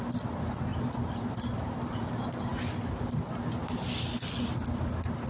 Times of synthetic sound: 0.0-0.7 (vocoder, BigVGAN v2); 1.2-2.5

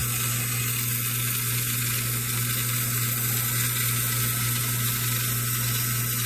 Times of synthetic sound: none